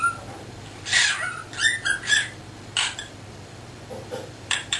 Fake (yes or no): yes